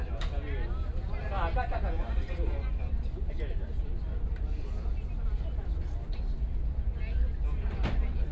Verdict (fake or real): real